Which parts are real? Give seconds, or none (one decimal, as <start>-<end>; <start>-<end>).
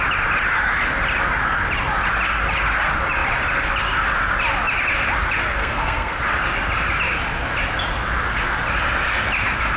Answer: 0.0-5.6; 6.2-9.8